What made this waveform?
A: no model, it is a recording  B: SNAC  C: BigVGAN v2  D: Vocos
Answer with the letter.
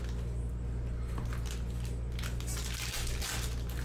A